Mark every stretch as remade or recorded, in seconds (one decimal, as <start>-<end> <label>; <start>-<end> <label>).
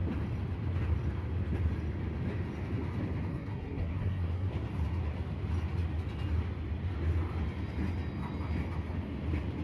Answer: 0.0-3.3 recorded; 3.3-4.5 remade; 4.5-9.6 recorded